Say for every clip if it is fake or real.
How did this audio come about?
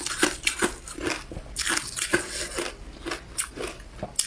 real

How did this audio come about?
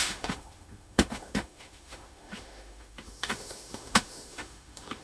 fake